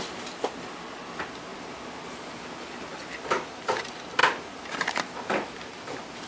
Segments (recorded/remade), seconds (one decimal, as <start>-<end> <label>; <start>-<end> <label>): 0.0-6.3 recorded